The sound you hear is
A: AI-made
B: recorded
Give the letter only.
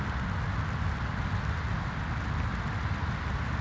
B